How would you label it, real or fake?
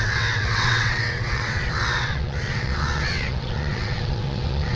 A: fake